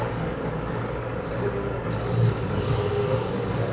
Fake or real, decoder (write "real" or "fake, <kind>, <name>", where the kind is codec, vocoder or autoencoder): fake, codec, DAC